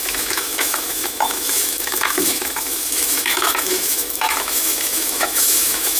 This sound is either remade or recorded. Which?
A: remade